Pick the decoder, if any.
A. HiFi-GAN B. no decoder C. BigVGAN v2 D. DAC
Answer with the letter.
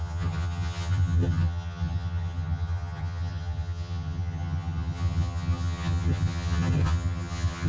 A